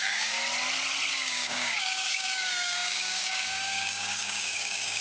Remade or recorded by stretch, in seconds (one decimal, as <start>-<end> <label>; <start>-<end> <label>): 0.0-0.4 remade; 0.4-1.1 recorded; 1.1-5.0 remade